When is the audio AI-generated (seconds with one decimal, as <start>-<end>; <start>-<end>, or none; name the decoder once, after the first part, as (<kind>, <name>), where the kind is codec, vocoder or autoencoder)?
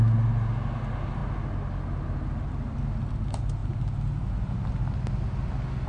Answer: none